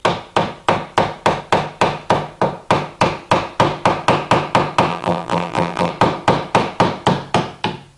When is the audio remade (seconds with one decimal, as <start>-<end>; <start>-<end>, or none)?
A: 4.9-5.9